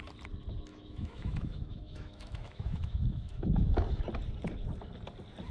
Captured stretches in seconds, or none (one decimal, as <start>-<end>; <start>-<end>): 0.0-0.7; 4.0-5.5